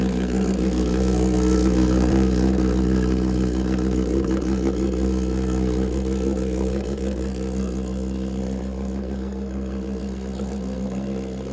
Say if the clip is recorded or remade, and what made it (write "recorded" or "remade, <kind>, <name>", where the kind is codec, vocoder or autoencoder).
remade, codec, SNAC